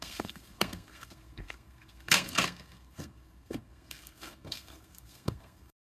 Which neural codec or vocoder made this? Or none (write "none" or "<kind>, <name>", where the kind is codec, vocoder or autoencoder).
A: codec, SNAC